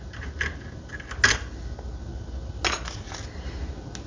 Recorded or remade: recorded